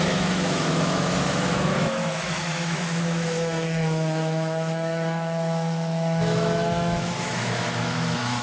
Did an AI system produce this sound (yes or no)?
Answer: yes